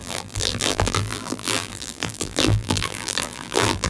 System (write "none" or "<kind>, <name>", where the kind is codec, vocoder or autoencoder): vocoder, BigVGAN v2